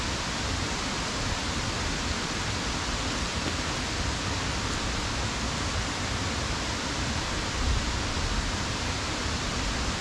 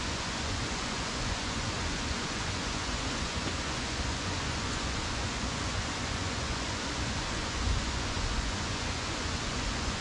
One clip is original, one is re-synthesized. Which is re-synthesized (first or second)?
second